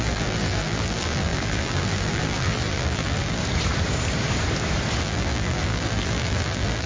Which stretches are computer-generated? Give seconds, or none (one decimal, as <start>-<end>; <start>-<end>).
0.0-3.4; 5.0-6.9